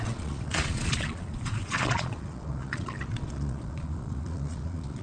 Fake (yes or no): yes